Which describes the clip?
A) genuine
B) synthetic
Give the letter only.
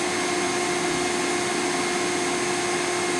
A